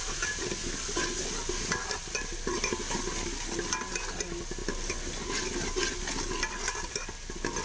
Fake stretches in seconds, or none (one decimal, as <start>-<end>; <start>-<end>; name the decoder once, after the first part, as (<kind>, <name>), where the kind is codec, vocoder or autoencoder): none